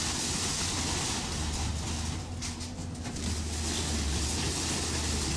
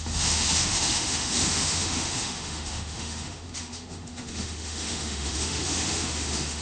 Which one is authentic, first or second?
first